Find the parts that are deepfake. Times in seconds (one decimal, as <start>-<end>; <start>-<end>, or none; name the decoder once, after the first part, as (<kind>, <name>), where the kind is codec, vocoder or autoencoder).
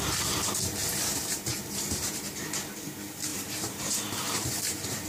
0.8-2.1 (vocoder, BigVGAN v2); 3.3-5.1